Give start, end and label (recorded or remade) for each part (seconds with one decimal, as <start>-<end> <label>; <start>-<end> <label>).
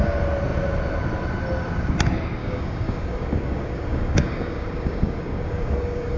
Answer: 0.0-2.4 recorded; 2.4-6.2 remade